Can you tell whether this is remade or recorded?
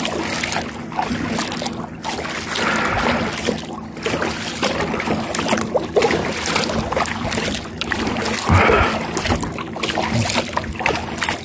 recorded